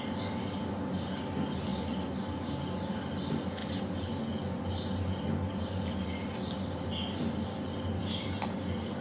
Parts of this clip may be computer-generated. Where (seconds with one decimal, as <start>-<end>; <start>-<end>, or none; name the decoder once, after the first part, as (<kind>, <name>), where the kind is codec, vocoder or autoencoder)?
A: 1.7-2.9 (vocoder, BigVGAN v2)

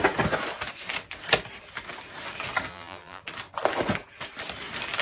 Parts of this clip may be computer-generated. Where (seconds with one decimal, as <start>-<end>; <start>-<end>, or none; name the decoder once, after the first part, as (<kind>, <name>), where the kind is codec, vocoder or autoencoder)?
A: 2.7-3.2 (vocoder, BigVGAN v2)

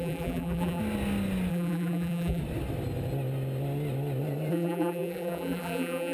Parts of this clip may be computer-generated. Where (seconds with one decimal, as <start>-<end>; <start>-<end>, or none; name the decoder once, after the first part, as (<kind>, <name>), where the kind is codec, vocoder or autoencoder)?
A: 0.0-0.8 (vocoder, BigVGAN v2); 1.5-2.4; 4.5-6.1

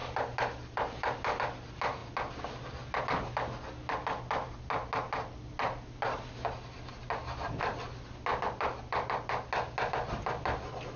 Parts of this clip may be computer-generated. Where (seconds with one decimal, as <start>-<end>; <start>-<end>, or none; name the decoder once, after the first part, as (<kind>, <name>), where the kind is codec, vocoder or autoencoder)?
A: 8.3-9.5 (vocoder, BigVGAN v2)

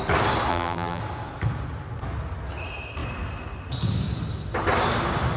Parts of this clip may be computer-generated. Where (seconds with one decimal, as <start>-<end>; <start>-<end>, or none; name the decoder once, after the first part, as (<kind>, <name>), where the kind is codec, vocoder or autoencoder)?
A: 0.5-1.0 (vocoder, BigVGAN v2)

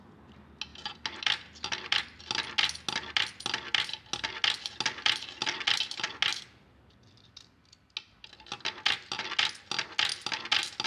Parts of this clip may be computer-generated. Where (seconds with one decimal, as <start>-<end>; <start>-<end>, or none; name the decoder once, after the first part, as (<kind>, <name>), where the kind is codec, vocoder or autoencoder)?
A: none

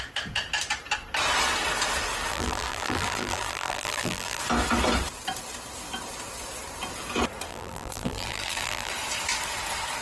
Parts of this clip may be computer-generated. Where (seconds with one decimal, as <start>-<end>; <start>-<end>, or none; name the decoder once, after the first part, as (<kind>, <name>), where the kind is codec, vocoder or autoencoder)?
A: 2.3-4.4 (vocoder, BigVGAN v2); 7.5-8.9